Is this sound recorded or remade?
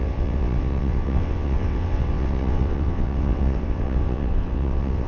remade